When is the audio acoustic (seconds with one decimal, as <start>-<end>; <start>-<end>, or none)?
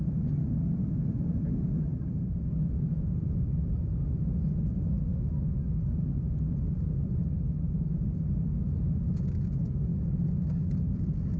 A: 0.0-11.4